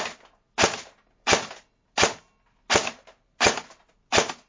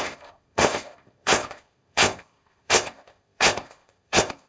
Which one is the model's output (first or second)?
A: second